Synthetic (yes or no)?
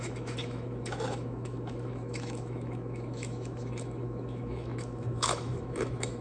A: yes